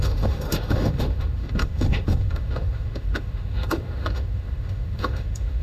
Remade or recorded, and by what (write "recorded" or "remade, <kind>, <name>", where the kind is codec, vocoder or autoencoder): remade, autoencoder, DAC-VAE